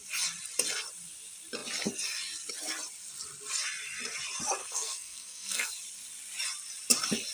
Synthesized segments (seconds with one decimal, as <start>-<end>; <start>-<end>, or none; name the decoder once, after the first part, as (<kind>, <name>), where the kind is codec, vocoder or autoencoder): 4.6-5.7 (codec, SNAC)